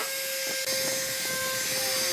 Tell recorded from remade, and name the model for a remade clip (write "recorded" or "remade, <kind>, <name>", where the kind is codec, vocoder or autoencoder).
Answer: recorded